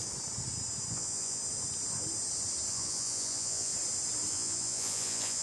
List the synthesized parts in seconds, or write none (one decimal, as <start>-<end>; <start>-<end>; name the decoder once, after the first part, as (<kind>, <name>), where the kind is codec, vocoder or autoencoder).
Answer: 0.9-1.4 (vocoder, Vocos); 2.7-3.7; 4.3-5.4